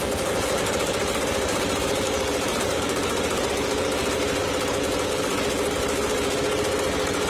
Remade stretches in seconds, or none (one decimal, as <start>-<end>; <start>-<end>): 1.0-3.5